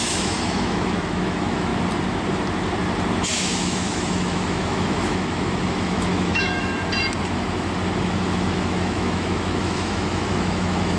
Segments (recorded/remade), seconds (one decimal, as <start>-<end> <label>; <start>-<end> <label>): 0.0-1.7 remade; 1.7-3.3 recorded; 3.3-6.7 remade; 6.7-8.0 recorded; 8.0-11.0 remade